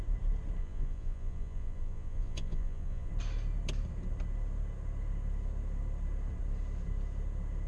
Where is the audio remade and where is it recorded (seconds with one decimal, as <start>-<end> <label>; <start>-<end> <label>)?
0.0-0.6 recorded; 0.6-3.1 remade; 3.1-7.7 recorded